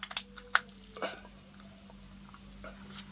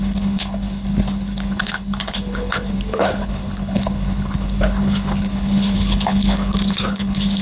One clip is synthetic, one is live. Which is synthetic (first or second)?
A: second